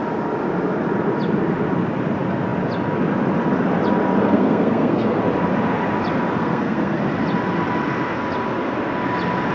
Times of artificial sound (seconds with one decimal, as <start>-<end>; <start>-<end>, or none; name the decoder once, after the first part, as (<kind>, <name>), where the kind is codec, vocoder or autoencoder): 4.2-5.2 (codec, SNAC); 6.4-7.0